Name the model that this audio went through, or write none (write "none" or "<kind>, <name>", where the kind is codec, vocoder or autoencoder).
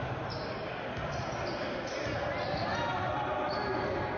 none